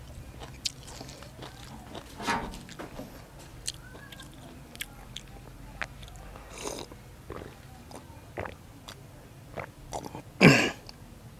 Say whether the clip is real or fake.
real